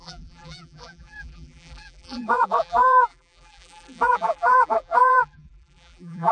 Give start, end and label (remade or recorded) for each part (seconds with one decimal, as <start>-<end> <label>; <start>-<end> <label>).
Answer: 0.0-6.3 remade